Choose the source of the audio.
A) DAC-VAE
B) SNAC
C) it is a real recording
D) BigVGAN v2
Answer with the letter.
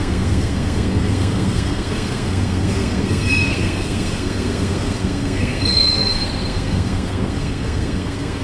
B